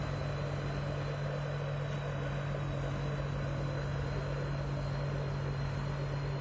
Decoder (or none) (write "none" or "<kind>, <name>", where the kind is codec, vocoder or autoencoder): none